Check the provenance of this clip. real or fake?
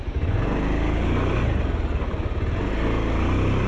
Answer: real